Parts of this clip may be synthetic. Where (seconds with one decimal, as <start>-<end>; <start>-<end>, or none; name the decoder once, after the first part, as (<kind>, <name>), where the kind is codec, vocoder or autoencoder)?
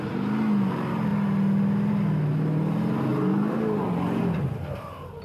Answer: none